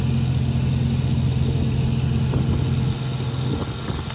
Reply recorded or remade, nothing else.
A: recorded